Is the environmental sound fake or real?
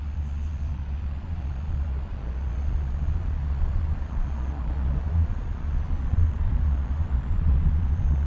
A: fake